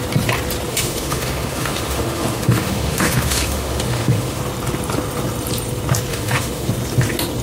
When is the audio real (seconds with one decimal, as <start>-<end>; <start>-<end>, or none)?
0.0-0.7; 4.4-6.1; 6.7-7.4